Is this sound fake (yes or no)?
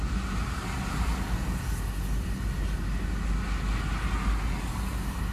no